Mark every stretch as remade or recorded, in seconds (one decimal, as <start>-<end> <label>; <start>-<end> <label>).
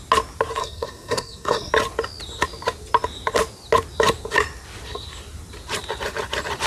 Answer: 0.0-0.6 recorded; 0.6-1.7 remade; 1.7-6.7 recorded